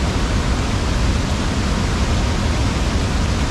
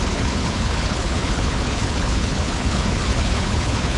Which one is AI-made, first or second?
second